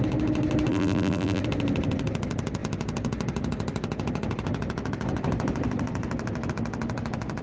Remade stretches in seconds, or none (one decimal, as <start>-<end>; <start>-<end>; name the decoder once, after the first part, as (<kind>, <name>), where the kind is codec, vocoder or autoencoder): 0.7-1.4 (vocoder, BigVGAN v2)

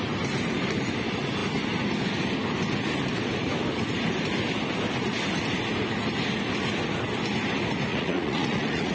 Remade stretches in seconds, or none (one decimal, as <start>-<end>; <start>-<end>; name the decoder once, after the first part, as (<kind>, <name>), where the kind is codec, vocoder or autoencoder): 7.9-8.9 (vocoder, Vocos)

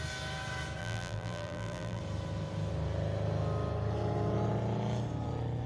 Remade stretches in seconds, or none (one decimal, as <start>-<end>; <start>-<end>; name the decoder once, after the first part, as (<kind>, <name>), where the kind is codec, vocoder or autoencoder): 0.8-2.0 (vocoder, BigVGAN v2)

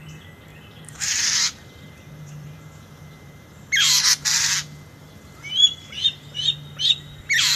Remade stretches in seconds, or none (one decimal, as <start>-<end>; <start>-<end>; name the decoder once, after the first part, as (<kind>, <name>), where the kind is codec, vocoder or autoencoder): 0.5-4.5 (vocoder, BigVGAN v2); 5.0-5.5

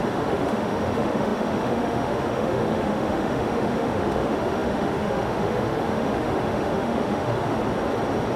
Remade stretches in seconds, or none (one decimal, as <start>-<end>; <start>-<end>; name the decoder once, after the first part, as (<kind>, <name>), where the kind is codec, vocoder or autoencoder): 0.0-7.6 (autoencoder, DAC-VAE)

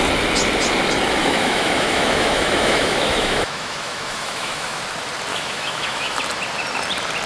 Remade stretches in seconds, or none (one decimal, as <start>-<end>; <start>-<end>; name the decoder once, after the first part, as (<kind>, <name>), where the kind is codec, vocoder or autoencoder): 1.2-4.8 (autoencoder, DAC-VAE); 5.3-6.2

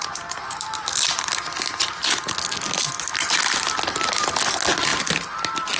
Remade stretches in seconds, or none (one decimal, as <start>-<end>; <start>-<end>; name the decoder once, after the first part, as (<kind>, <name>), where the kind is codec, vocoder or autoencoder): none